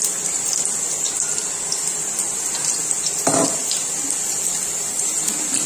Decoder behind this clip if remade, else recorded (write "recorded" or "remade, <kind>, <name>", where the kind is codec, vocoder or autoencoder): recorded